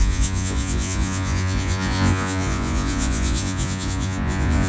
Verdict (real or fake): fake